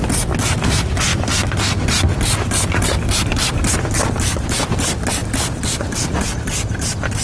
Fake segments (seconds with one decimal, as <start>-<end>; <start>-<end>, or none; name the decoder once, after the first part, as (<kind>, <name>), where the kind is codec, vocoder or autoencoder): none